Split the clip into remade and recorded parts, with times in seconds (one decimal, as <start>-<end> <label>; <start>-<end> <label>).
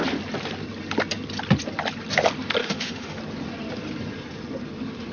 0.0-2.6 recorded; 2.6-3.2 remade; 3.2-5.1 recorded